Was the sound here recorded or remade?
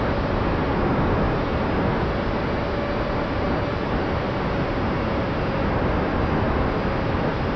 recorded